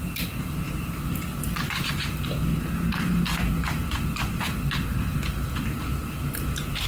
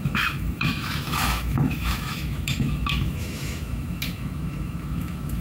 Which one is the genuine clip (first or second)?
first